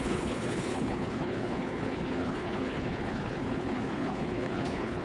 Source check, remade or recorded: remade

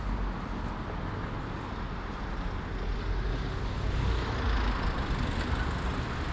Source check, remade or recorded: recorded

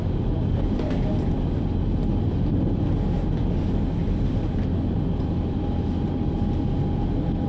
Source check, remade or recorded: recorded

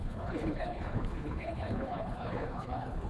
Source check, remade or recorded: remade